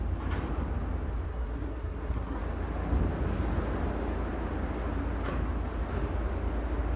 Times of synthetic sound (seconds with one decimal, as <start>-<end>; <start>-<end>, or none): 1.3-2.4